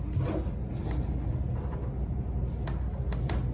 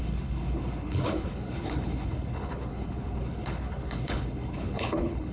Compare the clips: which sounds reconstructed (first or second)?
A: second